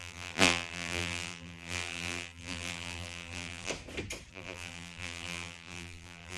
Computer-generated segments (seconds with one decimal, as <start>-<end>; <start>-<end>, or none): 0.0-3.7; 4.3-6.4